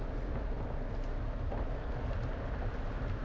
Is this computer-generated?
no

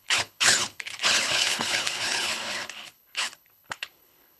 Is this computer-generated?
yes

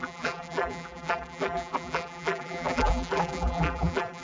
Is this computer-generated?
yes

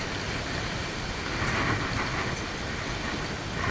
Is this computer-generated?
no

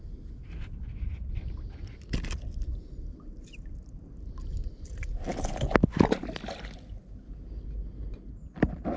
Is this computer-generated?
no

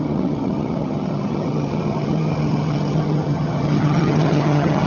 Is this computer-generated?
yes